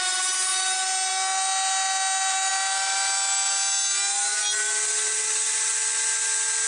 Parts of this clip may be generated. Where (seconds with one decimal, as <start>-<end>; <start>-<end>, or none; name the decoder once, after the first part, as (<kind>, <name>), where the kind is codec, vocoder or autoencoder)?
none